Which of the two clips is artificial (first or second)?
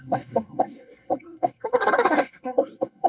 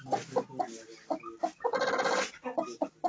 first